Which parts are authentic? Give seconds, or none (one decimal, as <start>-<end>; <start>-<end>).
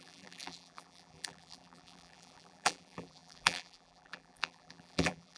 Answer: none